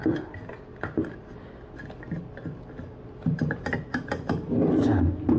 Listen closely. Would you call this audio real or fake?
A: real